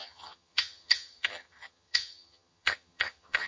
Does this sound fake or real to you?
fake